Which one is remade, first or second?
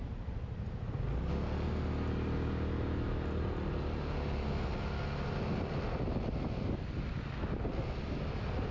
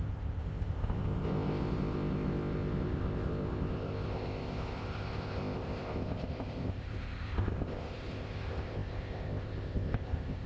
second